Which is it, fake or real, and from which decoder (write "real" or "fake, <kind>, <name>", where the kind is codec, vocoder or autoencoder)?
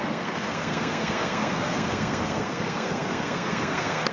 fake, codec, SNAC